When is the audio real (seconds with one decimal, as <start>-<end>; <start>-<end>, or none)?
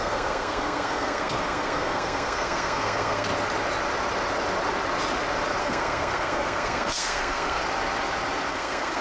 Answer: 3.3-5.6; 7.6-8.5